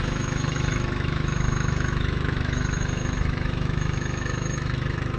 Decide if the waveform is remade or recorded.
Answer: remade